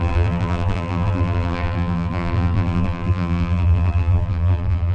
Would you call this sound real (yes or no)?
no